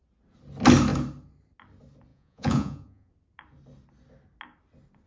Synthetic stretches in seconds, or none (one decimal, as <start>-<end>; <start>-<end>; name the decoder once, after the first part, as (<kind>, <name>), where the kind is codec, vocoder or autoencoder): 2.1-3.1 (vocoder, Vocos)